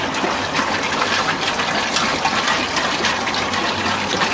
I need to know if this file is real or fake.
real